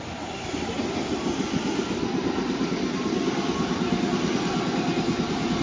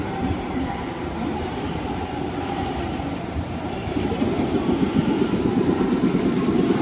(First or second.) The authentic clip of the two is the first